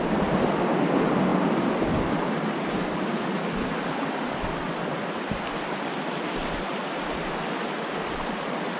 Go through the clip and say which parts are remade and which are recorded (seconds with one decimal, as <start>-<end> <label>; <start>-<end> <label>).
0.0-8.8 recorded